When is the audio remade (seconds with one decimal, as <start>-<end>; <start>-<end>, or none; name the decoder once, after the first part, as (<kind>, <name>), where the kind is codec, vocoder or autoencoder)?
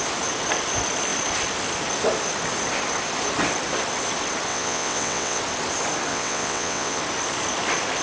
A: 4.5-5.4 (vocoder, WaveNeXt); 6.1-7.0